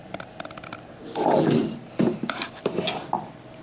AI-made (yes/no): no